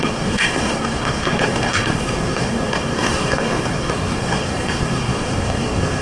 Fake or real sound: fake